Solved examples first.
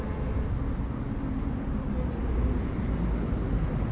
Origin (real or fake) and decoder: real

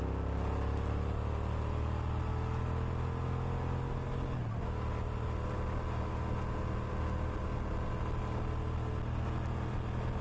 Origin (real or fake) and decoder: real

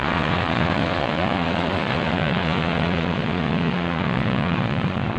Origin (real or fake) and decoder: fake, vocoder, Vocos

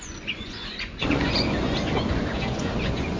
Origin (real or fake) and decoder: fake, vocoder, Vocos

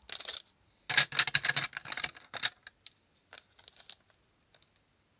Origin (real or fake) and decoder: real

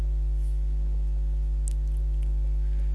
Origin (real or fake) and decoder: real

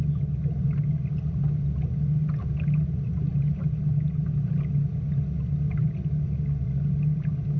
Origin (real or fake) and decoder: real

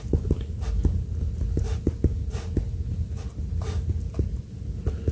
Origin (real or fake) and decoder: real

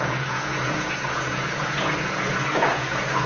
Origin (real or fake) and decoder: fake, vocoder, Vocos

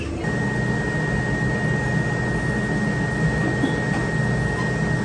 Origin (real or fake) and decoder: real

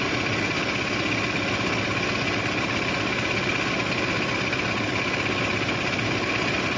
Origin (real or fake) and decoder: real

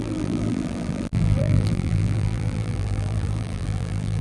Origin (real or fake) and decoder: fake, vocoder, BigVGAN v2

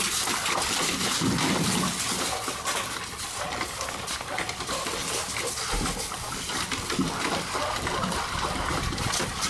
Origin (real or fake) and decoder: real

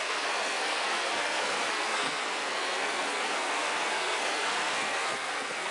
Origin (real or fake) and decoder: fake, codec, SNAC